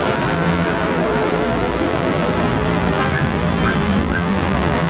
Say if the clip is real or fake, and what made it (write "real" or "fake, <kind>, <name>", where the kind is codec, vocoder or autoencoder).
fake, vocoder, BigVGAN v2